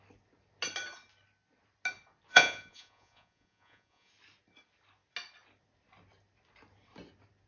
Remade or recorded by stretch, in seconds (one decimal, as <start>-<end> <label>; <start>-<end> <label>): 0.0-2.3 recorded; 2.3-4.1 remade; 4.1-7.5 recorded